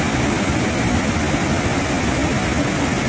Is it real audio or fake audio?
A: real